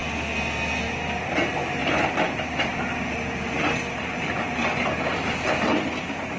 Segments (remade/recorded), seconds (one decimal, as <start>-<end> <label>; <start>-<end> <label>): 0.0-6.4 recorded